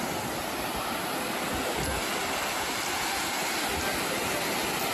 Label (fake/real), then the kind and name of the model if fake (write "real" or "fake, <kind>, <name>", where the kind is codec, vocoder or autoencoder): real